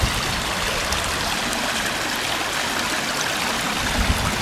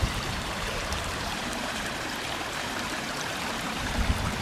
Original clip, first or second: first